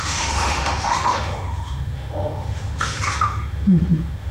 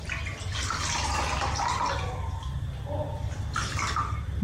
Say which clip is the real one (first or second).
second